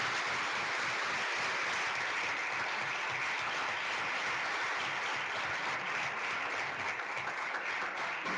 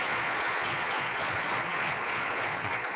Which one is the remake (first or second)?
second